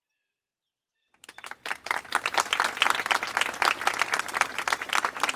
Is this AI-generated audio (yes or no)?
no